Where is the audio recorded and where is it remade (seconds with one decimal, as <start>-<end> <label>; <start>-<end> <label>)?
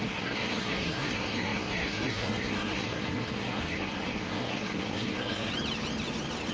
0.0-5.5 remade; 5.5-6.5 recorded